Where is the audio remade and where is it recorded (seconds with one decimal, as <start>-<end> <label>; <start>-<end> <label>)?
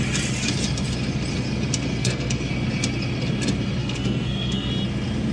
0.0-2.0 recorded; 2.0-2.5 remade; 2.5-3.8 recorded; 3.8-4.7 remade; 4.7-5.3 recorded